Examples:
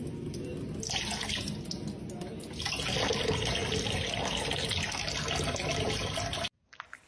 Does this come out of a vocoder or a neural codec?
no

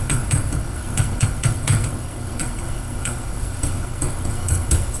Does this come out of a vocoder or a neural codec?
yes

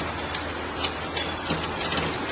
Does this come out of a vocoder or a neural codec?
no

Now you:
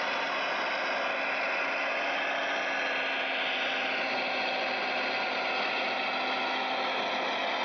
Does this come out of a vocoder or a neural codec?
no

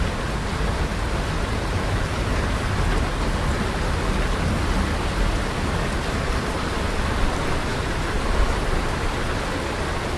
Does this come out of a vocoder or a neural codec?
no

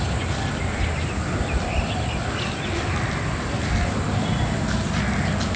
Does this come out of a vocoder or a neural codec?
no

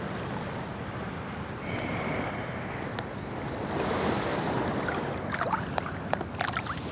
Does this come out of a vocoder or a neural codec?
no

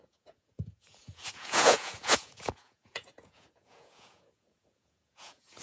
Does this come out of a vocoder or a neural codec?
yes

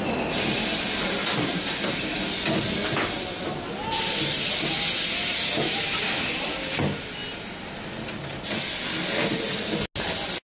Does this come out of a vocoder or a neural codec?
no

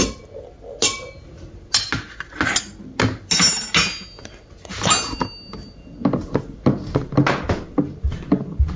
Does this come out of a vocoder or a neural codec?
no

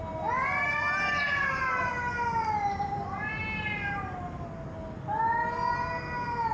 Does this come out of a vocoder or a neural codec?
no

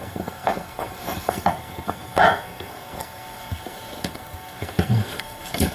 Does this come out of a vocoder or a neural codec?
yes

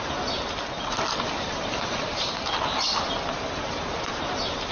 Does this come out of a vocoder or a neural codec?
no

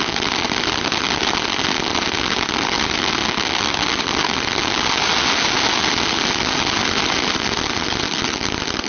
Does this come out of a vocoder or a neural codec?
no